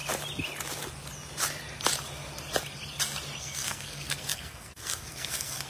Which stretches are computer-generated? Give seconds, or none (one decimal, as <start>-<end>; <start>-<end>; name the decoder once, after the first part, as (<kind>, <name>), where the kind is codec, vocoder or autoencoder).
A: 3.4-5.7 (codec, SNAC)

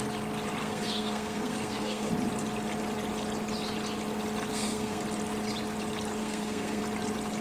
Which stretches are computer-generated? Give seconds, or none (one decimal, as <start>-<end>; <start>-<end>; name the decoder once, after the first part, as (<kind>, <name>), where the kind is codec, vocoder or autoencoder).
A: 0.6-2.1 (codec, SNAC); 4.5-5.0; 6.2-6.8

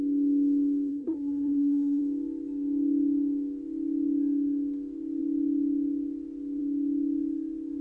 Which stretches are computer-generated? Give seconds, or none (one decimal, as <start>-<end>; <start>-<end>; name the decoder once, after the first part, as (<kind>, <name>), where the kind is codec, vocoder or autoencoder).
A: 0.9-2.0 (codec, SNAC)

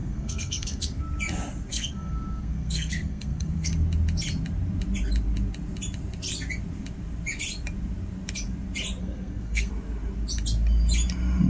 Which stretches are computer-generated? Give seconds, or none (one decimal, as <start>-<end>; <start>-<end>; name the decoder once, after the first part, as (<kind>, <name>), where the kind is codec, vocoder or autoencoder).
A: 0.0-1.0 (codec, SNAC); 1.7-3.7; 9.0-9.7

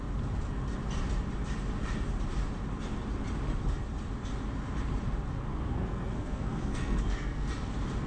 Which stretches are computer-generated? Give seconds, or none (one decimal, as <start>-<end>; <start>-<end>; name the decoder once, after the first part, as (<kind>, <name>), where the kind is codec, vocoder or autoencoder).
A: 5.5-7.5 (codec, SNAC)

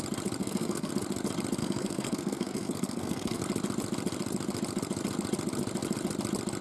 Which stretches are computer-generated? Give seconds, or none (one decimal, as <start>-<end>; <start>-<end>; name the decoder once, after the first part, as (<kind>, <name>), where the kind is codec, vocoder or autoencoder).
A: 0.4-0.9 (codec, SNAC); 1.6-3.4

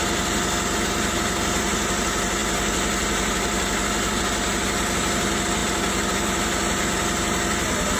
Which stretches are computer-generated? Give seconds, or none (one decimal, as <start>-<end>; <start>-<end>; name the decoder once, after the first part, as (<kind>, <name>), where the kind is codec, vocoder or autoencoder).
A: none

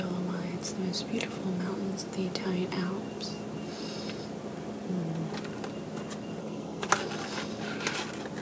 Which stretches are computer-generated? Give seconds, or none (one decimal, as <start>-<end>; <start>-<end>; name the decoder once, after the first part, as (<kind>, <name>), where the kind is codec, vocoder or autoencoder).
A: 6.4-6.9 (codec, SNAC)